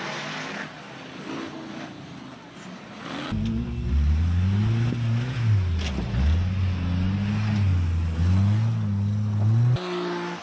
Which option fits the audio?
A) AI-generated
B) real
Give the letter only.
B